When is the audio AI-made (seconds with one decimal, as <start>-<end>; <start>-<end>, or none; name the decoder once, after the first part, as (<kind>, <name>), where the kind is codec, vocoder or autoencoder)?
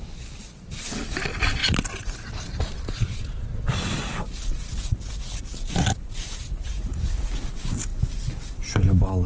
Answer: 6.2-7.2 (vocoder, Vocos)